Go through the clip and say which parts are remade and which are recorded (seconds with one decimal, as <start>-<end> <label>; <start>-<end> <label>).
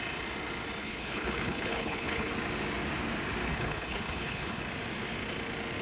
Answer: 0.0-0.8 recorded; 0.8-2.3 remade; 2.3-3.5 recorded; 3.5-4.6 remade; 4.6-5.8 recorded